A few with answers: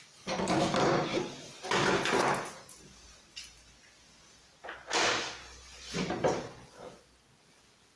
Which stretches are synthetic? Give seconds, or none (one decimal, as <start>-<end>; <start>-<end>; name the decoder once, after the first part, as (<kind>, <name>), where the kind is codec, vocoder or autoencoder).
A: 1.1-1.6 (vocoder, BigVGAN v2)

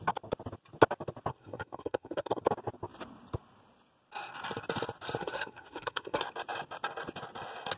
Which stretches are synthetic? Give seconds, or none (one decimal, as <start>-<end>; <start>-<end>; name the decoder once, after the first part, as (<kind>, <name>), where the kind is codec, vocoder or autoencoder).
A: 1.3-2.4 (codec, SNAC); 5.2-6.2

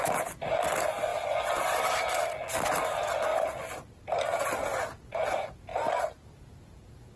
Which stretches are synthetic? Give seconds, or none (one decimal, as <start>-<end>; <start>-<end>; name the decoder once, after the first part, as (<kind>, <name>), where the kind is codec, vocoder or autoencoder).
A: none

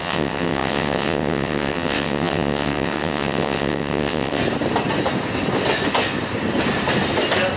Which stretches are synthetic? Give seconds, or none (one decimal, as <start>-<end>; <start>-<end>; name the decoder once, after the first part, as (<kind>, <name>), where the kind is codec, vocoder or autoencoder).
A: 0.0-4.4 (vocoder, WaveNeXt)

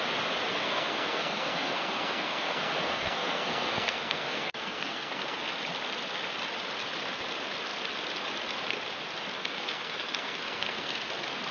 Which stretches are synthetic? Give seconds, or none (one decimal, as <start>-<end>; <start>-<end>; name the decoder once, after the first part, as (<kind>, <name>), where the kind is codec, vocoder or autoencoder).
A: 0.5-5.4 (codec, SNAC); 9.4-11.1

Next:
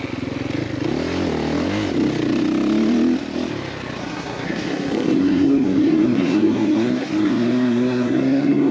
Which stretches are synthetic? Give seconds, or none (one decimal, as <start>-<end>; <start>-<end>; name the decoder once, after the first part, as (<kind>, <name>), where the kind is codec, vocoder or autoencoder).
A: 4.0-8.7 (codec, SNAC)

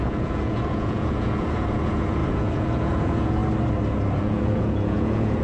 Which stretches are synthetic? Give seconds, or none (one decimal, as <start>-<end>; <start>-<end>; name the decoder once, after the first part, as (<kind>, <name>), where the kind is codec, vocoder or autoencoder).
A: 0.0-3.4 (vocoder, Vocos); 4.2-5.4